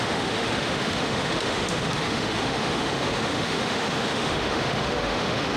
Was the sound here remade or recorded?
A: remade